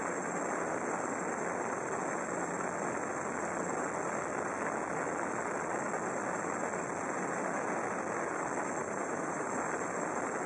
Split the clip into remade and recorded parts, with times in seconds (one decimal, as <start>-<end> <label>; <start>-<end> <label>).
0.0-8.8 recorded; 8.8-9.5 remade; 9.5-10.5 recorded